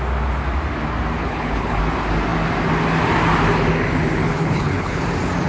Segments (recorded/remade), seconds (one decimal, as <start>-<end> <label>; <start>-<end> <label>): 0.0-1.2 recorded; 1.2-1.8 remade; 1.8-4.3 recorded; 4.3-5.0 remade; 5.0-5.5 recorded